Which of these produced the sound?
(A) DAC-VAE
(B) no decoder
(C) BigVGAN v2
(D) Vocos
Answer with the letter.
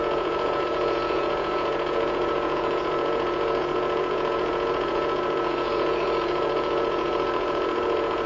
D